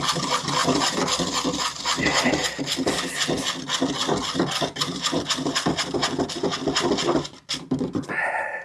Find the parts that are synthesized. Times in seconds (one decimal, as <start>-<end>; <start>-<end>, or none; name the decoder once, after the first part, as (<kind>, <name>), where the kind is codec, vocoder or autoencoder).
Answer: 0.6-3.0 (vocoder, BigVGAN v2); 4.0-7.7